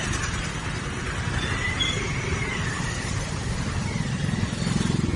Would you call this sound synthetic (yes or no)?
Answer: no